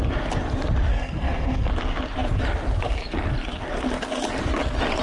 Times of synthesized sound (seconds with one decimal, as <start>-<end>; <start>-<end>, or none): 0.9-1.7